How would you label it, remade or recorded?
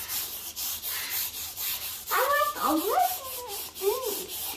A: remade